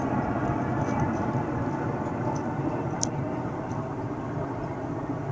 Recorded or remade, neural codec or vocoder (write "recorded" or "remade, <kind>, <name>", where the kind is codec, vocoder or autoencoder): recorded